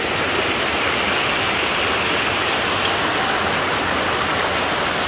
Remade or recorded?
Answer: recorded